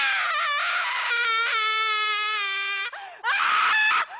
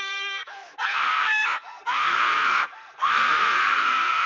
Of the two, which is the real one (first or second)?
first